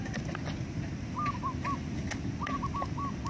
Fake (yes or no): no